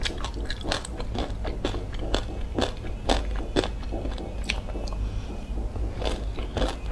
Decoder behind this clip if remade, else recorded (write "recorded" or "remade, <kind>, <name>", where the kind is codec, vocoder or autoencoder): recorded